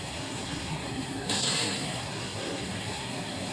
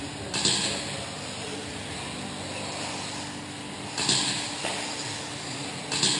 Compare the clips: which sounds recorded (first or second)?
second